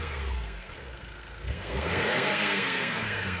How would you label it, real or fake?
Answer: fake